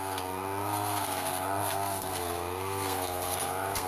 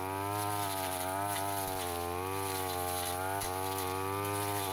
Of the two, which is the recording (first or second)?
second